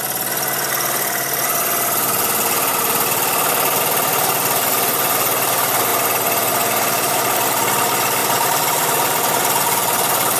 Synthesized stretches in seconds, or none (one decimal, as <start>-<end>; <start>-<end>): 2.7-3.8; 8.2-9.2